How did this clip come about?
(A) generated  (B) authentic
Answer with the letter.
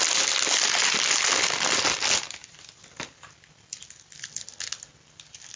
B